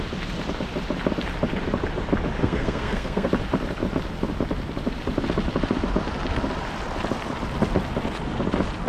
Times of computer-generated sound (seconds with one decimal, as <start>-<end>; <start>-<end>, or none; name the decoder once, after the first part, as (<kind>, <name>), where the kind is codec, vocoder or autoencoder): 2.4-3.3 (codec, SNAC)